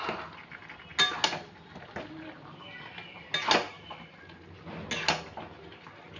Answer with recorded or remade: recorded